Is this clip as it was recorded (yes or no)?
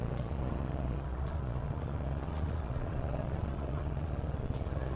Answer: no